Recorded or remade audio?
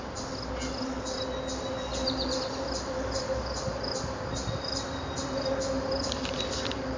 recorded